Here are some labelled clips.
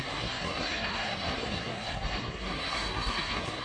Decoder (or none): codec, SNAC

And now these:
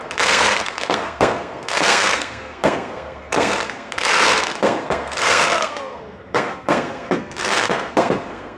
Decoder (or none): codec, SNAC